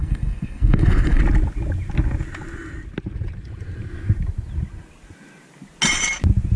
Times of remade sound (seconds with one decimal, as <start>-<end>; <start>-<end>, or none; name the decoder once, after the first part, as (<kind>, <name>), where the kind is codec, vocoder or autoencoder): 0.0-1.2 (codec, SNAC)